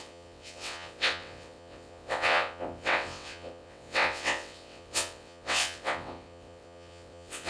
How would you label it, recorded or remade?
remade